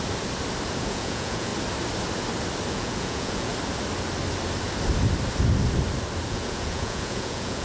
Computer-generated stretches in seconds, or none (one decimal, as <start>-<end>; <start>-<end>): 0.8-1.5; 2.7-3.5; 6.3-7.6